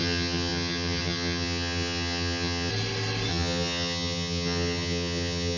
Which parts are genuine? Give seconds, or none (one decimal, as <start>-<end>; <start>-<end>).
2.7-3.3